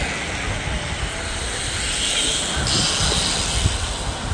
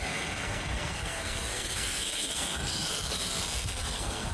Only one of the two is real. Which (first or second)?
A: first